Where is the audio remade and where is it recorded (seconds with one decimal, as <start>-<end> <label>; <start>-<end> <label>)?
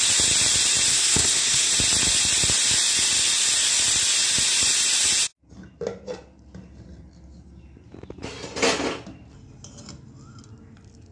0.0-0.9 recorded; 0.9-1.7 remade; 1.7-11.1 recorded